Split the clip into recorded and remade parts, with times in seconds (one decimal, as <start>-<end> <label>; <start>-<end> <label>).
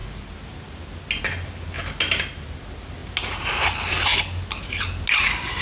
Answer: 0.0-5.6 recorded